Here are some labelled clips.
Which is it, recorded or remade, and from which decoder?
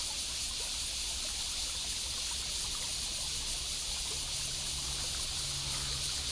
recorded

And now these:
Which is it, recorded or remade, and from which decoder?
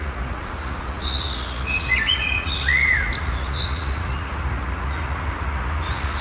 remade, vocoder, Vocos